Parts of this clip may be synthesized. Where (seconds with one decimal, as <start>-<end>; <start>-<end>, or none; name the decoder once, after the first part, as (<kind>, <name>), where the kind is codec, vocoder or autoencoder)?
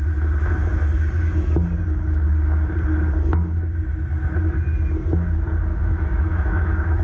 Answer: 5.7-7.0 (autoencoder, DAC-VAE)